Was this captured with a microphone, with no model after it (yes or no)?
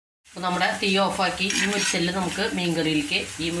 yes